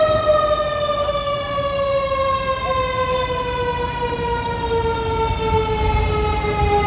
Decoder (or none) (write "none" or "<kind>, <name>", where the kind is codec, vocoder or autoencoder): none